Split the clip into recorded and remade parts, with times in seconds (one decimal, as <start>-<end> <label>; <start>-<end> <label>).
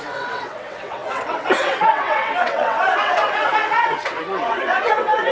0.0-5.3 remade